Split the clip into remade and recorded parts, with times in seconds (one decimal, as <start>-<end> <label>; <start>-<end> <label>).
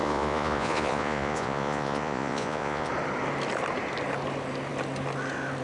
0.0-2.9 remade; 2.9-5.6 recorded